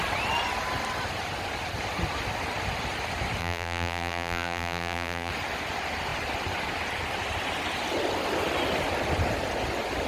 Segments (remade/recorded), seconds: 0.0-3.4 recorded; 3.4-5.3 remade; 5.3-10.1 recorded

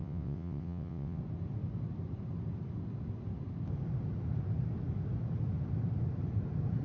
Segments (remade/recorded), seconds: 0.0-1.2 remade; 1.2-6.8 recorded

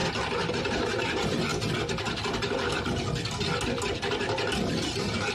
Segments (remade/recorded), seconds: 0.0-0.5 recorded; 0.5-1.5 remade; 1.5-4.7 recorded; 4.7-5.3 remade

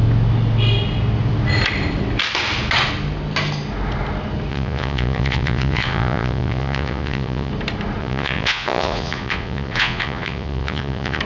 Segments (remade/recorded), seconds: 0.0-4.5 recorded; 4.5-7.5 remade; 7.5-8.0 recorded; 8.0-11.2 remade

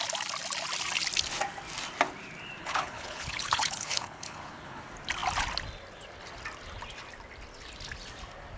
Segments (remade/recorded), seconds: 0.0-2.6 recorded; 2.6-4.8 remade; 4.8-8.6 recorded